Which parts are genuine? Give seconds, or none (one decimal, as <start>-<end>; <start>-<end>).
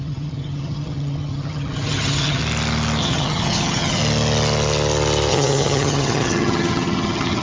2.4-3.0; 4.0-5.3